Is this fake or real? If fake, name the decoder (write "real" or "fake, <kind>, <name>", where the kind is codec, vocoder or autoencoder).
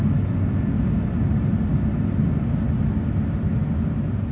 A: real